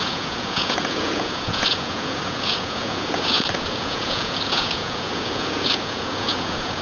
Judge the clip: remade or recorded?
remade